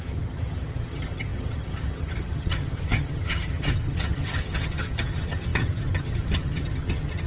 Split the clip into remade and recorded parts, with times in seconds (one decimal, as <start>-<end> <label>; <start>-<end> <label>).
0.0-7.3 remade